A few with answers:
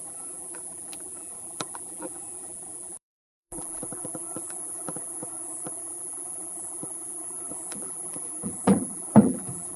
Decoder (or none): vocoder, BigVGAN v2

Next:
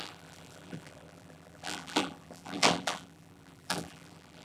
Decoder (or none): vocoder, BigVGAN v2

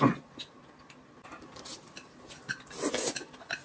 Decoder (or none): none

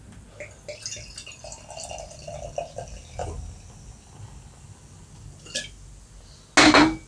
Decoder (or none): none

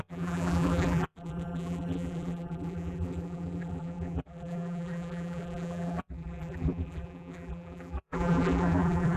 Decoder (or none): vocoder, BigVGAN v2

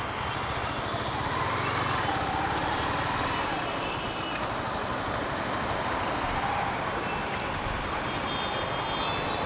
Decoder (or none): none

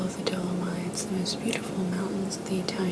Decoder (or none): none